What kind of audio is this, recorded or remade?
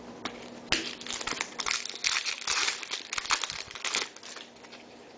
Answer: recorded